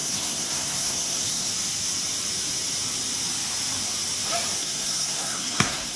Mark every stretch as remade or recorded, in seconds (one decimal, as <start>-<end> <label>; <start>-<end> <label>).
0.0-1.5 remade; 1.5-4.6 recorded; 4.6-6.0 remade